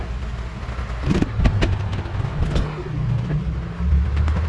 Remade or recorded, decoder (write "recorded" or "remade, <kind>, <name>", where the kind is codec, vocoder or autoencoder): recorded